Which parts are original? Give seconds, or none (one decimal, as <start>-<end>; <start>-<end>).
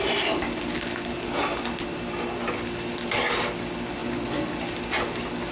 0.0-5.5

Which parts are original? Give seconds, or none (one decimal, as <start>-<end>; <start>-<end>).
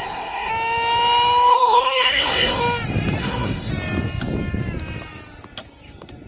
0.5-1.5; 2.6-3.2; 3.7-6.3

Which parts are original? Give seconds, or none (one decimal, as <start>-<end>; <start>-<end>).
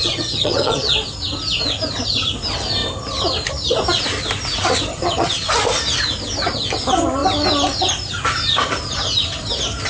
0.9-4.9; 5.5-9.9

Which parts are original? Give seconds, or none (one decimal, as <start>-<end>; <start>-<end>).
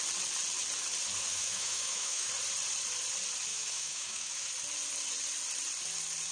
0.0-1.3; 2.3-3.5; 4.5-6.3